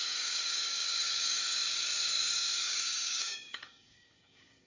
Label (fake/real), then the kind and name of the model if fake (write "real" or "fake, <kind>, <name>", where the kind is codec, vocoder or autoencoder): fake, codec, DAC